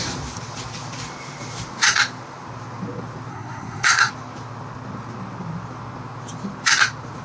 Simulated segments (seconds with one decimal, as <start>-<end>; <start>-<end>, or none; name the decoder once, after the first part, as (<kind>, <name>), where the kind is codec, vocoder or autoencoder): 3.3-4.1 (codec, SNAC)